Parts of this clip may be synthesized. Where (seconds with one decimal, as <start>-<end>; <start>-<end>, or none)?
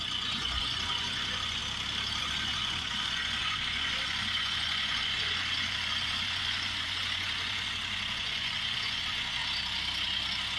0.0-1.6; 2.2-9.4